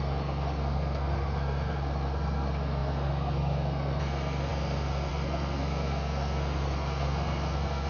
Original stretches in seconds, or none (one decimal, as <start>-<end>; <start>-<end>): none